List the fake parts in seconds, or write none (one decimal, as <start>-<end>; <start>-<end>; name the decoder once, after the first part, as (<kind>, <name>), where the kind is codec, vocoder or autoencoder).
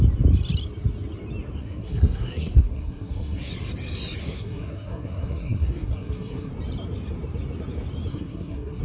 1.6-3.5 (codec, SNAC); 4.2-6.5; 8.1-8.8